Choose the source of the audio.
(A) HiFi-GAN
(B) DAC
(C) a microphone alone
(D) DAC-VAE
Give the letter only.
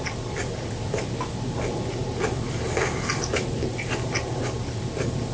C